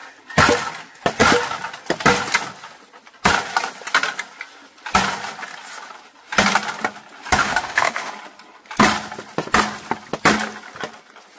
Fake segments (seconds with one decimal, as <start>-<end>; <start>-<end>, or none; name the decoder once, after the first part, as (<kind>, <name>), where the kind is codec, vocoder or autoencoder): 7.4-8.1 (autoencoder, DAC-VAE)